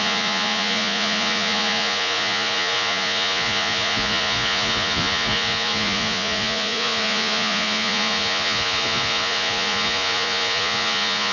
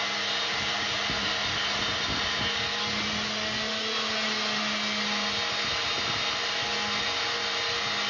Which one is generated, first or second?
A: first